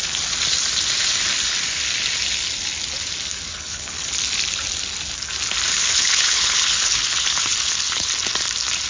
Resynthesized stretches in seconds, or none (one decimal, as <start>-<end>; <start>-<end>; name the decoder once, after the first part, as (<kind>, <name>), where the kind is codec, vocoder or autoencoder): 3.5-4.1 (codec, HILCodec); 5.7-8.1